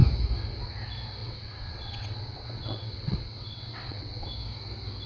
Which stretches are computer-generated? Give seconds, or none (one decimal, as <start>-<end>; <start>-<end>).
1.2-4.3